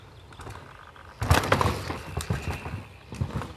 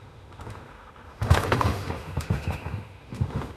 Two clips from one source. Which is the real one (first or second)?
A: first